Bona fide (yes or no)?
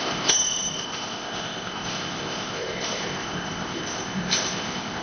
no